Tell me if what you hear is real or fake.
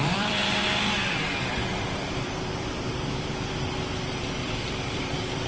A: fake